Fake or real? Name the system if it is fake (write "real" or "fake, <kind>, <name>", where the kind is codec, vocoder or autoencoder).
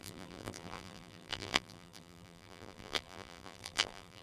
fake, vocoder, BigVGAN v2